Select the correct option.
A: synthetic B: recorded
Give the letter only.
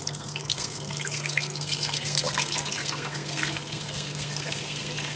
A